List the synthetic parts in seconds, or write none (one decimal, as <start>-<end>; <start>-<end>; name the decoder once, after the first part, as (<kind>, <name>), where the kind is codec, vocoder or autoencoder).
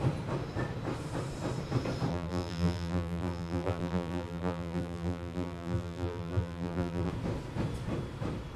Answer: 2.1-7.1 (vocoder, BigVGAN v2)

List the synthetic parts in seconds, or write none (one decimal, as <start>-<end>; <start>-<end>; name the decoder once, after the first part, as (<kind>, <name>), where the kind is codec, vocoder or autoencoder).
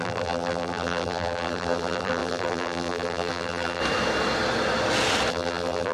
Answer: 0.0-3.8 (vocoder, BigVGAN v2); 5.3-5.9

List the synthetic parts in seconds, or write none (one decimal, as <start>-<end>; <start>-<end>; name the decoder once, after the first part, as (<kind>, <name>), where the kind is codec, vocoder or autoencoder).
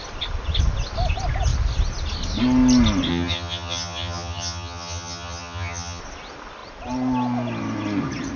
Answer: 3.1-6.0 (vocoder, HiFi-GAN)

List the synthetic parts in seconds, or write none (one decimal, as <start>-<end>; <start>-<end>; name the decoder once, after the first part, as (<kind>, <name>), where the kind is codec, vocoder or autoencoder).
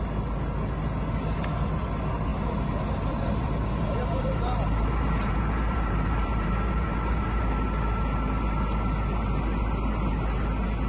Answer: 2.3-7.4 (vocoder, BigVGAN v2)